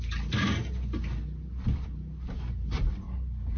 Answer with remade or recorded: recorded